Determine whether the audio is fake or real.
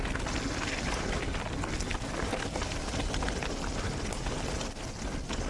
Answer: real